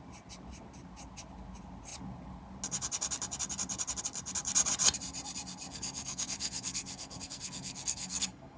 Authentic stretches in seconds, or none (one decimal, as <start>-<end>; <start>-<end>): 0.0-5.7